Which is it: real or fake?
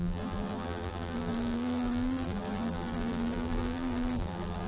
fake